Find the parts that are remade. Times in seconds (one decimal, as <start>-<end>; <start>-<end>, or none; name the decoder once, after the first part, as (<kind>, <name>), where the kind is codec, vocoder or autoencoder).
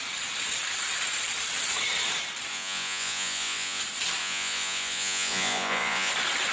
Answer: 2.5-3.8 (vocoder, Vocos); 4.2-6.1